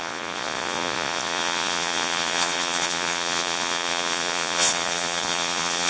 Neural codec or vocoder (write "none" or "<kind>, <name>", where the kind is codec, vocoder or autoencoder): vocoder, Vocos